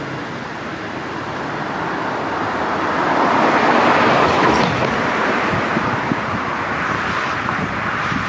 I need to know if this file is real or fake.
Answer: real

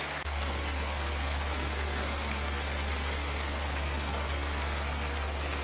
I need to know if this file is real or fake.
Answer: fake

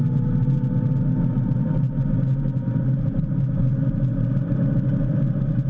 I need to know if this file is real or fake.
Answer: real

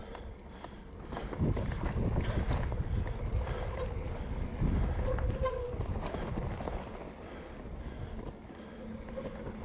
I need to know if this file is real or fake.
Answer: real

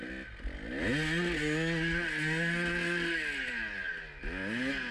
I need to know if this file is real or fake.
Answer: real